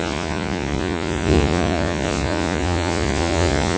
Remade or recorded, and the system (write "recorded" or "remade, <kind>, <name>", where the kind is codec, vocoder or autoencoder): remade, vocoder, Vocos